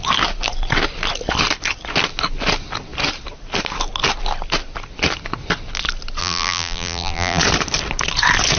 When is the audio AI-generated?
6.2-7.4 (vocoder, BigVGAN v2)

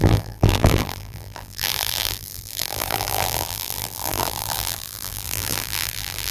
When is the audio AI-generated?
0.0-6.3 (vocoder, BigVGAN v2)

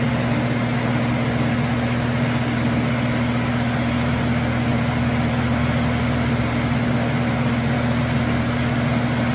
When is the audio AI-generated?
none

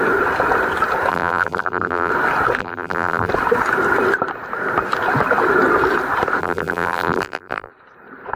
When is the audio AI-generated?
1.1-2.1 (vocoder, BigVGAN v2); 2.6-3.3; 6.4-7.7

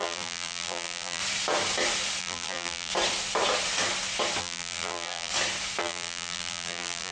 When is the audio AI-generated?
0.0-1.2 (vocoder, BigVGAN v2); 2.2-2.9; 4.4-5.3; 5.8-7.1

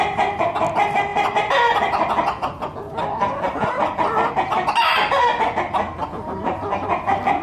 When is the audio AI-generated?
none

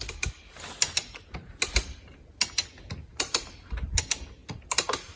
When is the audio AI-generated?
3.0-4.0 (vocoder, BigVGAN v2)